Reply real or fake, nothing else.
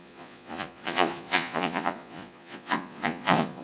fake